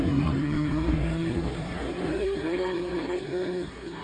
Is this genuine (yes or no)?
no